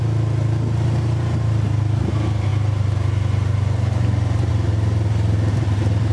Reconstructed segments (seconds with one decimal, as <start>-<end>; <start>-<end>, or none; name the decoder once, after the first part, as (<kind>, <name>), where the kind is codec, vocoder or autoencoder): none